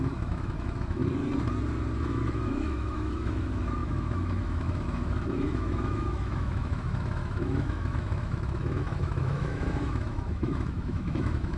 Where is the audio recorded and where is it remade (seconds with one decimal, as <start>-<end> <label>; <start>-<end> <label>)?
0.0-1.0 remade; 1.0-2.1 recorded; 2.1-11.6 remade